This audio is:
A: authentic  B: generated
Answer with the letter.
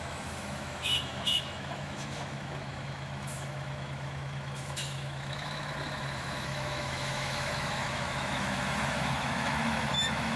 B